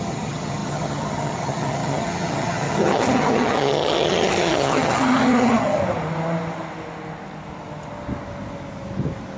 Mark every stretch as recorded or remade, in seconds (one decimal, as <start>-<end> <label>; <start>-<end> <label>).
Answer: 0.0-5.8 remade; 5.8-9.4 recorded